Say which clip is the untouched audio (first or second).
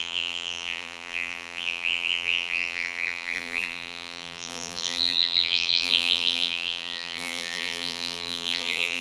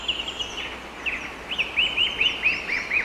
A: second